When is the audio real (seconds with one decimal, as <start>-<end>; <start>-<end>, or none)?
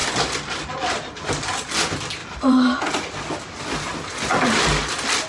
1.1-2.2; 2.8-5.3